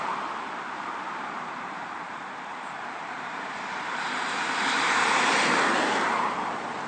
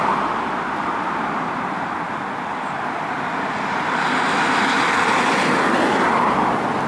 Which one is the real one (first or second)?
second